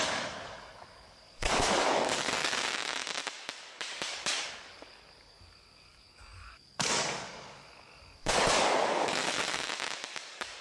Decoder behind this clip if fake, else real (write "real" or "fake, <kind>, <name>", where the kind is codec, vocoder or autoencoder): fake, codec, DAC